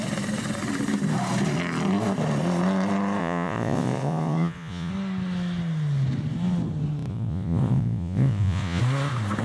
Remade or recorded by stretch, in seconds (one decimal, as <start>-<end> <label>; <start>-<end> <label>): 0.0-3.2 recorded; 3.2-4.9 remade; 4.9-7.1 recorded; 7.1-8.8 remade; 8.8-9.4 recorded